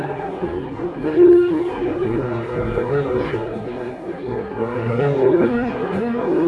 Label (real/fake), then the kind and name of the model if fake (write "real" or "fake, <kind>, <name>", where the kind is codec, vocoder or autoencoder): fake, codec, SNAC